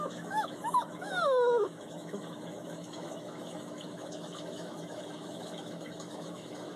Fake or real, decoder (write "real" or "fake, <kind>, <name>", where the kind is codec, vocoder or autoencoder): fake, autoencoder, DAC-VAE